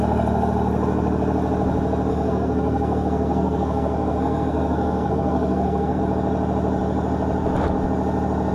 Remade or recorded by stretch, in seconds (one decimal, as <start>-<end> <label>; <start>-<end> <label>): 0.0-2.1 recorded; 2.1-6.0 remade; 6.0-8.5 recorded